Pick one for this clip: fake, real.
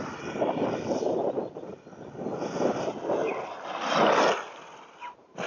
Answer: real